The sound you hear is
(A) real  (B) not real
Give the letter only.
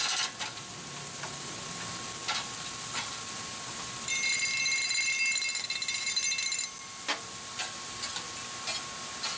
A